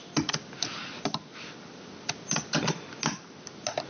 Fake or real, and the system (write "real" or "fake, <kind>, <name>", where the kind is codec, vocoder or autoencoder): real